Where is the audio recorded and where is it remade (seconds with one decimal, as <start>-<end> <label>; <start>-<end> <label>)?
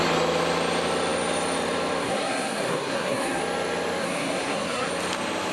0.0-2.0 recorded; 2.0-3.4 remade; 3.4-4.0 recorded; 4.0-4.9 remade; 4.9-5.5 recorded